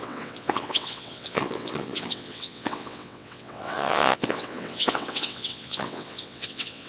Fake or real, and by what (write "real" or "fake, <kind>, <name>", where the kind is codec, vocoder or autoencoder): fake, vocoder, WaveNeXt